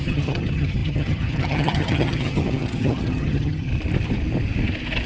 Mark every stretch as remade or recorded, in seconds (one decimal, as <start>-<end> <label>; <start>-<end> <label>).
0.0-3.7 remade; 3.7-5.1 recorded